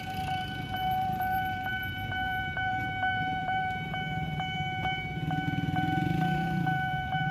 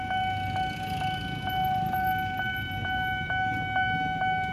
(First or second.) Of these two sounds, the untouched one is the second